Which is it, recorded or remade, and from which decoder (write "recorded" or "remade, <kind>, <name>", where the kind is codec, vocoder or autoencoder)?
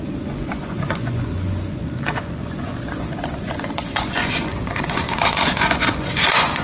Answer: remade, vocoder, Vocos